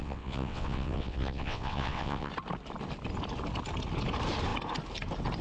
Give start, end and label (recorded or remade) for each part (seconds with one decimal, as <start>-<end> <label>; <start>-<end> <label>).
0.0-2.3 remade; 2.3-5.4 recorded